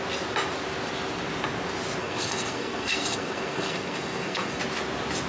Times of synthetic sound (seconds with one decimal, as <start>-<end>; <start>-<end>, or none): 2.0-4.6